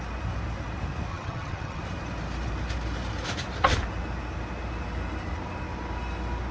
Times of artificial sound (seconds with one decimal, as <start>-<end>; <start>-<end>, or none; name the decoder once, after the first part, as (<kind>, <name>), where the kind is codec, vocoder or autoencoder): 1.1-1.8 (vocoder, HiFi-GAN)